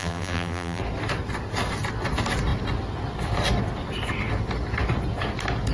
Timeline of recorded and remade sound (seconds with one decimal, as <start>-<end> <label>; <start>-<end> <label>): 0.0-0.8 remade; 0.8-5.7 recorded